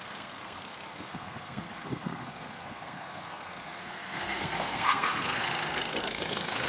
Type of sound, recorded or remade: remade